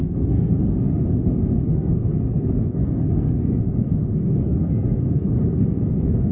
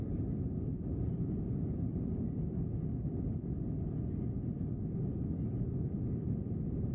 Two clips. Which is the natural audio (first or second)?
second